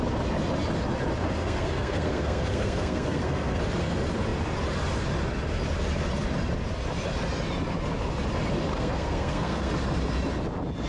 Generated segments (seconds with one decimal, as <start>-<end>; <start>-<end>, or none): 1.4-3.6; 8.7-9.7